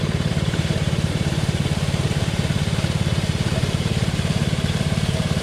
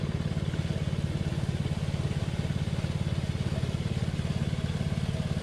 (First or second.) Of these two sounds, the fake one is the first